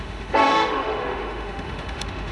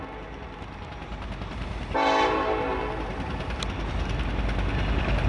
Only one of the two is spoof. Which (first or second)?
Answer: first